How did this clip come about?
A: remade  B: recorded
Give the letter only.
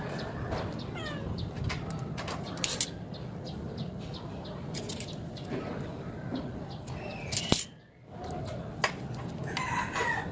B